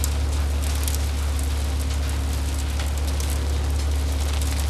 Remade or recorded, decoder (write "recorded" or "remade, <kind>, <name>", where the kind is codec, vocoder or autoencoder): recorded